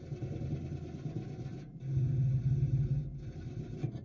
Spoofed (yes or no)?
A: no